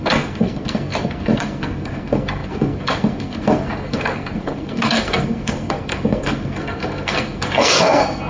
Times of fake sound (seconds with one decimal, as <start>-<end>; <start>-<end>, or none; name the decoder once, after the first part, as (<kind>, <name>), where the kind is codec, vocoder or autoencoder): 0.0-8.3 (codec, SNAC)